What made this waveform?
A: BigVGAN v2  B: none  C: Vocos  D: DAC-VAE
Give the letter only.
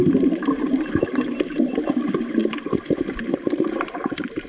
A